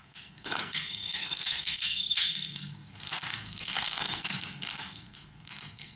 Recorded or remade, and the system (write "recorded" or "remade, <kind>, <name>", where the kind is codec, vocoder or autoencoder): remade, codec, SNAC